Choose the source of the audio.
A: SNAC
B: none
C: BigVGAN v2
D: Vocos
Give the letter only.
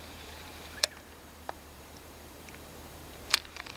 C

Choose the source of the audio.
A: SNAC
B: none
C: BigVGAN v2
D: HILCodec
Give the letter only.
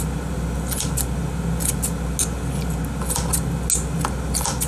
B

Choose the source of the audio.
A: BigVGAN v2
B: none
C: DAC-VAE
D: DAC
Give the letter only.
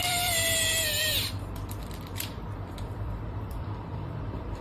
A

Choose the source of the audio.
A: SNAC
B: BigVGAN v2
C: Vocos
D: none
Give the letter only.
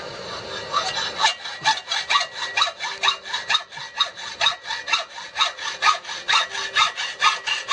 D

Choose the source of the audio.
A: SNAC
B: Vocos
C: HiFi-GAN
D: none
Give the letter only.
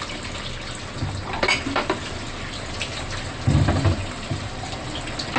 D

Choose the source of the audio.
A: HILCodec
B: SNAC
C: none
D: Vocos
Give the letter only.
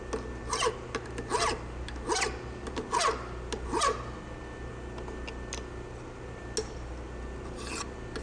C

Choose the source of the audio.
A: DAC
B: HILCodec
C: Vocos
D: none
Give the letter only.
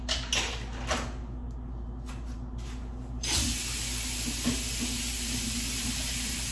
D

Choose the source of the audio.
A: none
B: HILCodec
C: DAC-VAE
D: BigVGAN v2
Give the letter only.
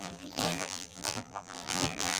D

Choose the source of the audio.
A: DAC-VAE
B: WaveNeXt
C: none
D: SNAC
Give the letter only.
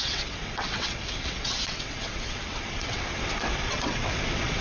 B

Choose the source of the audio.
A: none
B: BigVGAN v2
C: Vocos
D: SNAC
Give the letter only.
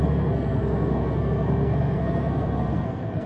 D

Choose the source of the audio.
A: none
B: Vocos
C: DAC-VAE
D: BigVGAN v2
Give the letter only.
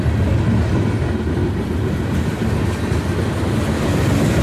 A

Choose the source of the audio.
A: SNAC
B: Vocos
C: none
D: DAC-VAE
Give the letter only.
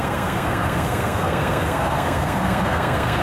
A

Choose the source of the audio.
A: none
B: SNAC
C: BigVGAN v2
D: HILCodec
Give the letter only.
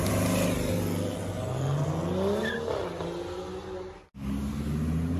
A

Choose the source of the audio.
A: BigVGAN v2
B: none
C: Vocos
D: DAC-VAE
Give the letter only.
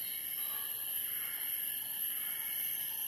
B